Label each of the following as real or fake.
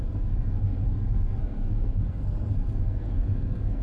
fake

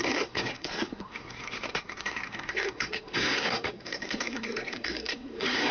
fake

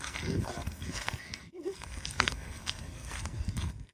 fake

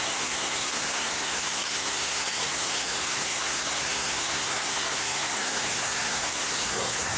fake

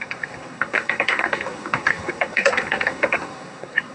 fake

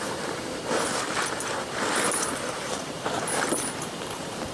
real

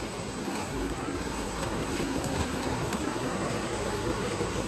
fake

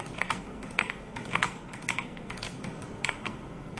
fake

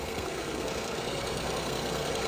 fake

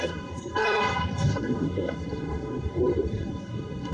fake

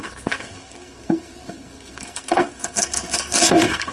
fake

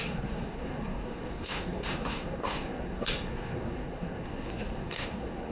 fake